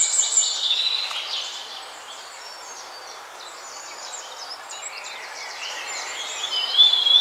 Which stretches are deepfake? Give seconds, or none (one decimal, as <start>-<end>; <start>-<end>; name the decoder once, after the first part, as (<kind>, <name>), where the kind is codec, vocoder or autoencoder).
0.0-7.2 (vocoder, BigVGAN v2)